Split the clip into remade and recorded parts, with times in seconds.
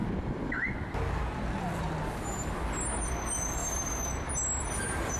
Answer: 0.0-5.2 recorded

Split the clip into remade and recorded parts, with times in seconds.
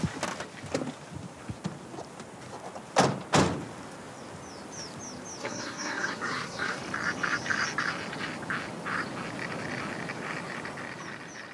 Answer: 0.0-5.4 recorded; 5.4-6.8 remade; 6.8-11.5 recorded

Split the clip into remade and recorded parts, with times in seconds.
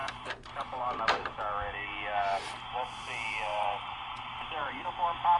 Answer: 0.0-1.0 remade; 1.0-3.5 recorded; 3.5-4.9 remade; 4.9-5.4 recorded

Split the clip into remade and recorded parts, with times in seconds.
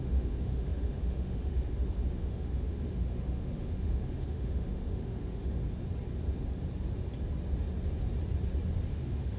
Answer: 0.0-5.6 remade; 5.6-8.9 recorded; 8.9-9.4 remade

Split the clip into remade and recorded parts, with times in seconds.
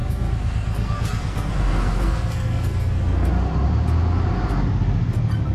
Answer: 0.0-3.3 remade; 3.3-5.5 recorded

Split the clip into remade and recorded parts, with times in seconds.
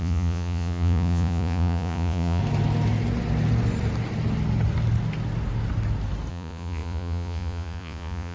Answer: 0.0-2.4 remade; 2.4-6.3 recorded; 6.3-8.3 remade